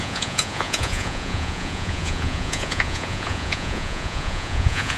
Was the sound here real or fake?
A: fake